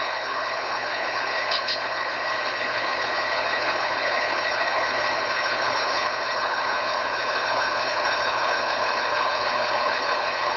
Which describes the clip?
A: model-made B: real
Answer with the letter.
A